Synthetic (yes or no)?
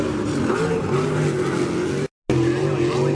no